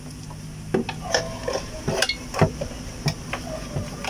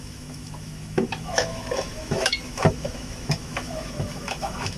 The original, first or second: first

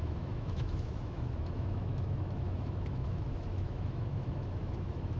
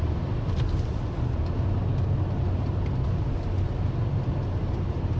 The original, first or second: second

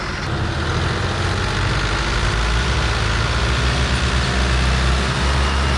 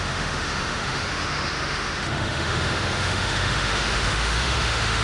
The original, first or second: first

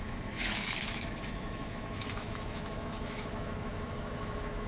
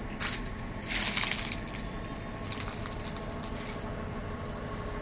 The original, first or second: second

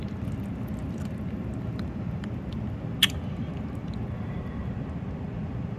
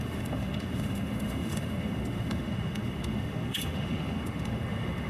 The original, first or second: first